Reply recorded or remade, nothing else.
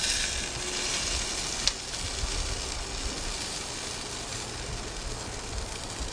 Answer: recorded